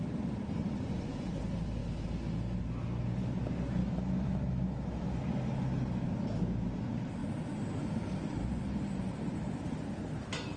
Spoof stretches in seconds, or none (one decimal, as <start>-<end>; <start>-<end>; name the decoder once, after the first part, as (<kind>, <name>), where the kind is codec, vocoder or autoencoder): 3.8-5.2 (autoencoder, DAC-VAE)